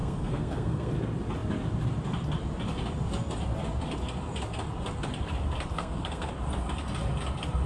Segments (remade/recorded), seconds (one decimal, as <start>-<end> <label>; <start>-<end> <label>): 0.0-0.9 remade; 0.9-5.7 recorded; 5.7-6.3 remade; 6.3-7.7 recorded